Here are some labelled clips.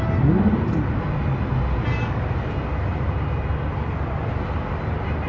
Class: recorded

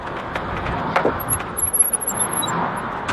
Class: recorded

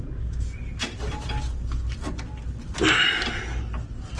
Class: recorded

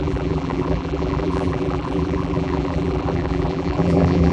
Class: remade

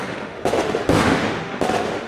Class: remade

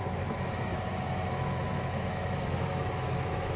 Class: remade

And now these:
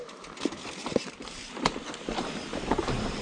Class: remade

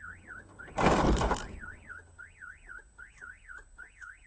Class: recorded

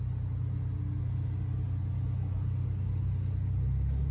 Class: recorded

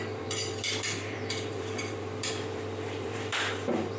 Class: remade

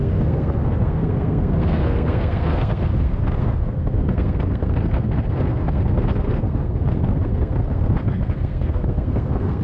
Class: remade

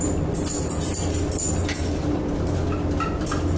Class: recorded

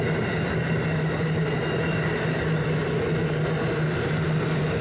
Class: recorded